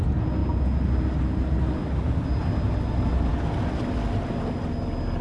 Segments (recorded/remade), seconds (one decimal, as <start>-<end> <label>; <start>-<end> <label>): 0.0-5.2 recorded